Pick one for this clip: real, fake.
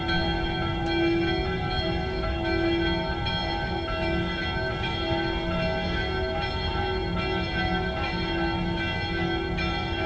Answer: real